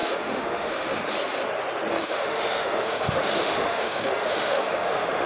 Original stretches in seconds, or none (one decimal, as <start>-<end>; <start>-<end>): 1.1-1.9